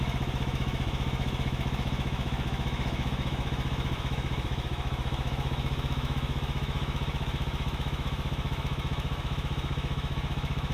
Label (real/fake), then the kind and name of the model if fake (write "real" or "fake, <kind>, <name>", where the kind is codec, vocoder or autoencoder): fake, autoencoder, DAC-VAE